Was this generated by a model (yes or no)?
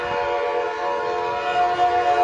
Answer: no